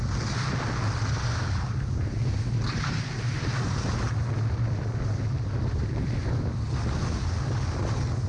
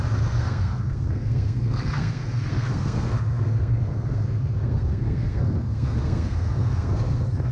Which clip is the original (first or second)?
first